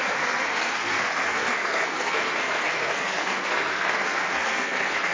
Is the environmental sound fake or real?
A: fake